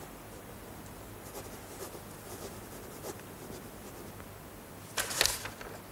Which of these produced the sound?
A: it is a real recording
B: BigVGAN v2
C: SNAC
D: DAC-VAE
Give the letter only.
A